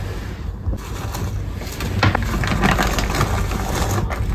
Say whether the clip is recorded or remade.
recorded